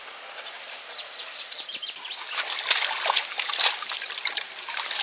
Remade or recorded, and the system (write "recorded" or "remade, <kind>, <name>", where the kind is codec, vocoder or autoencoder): recorded